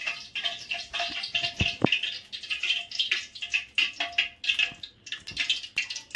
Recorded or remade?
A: recorded